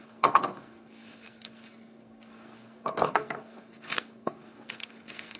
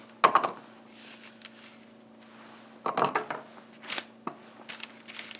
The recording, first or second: second